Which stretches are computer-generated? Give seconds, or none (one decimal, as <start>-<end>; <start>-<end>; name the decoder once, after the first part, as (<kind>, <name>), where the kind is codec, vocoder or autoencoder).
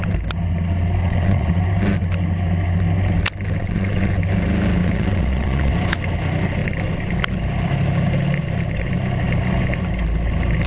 1.0-1.5 (vocoder, WaveNeXt); 3.6-4.1; 4.8-5.7